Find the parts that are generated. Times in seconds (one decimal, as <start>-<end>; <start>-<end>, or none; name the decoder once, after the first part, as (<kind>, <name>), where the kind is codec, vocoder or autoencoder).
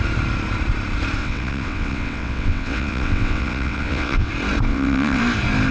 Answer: 1.2-4.3 (vocoder, WaveNeXt); 4.7-5.2